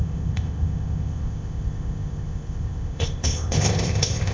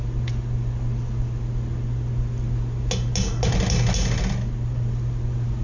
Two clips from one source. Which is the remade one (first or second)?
first